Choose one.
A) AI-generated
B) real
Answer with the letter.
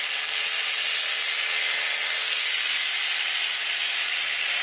B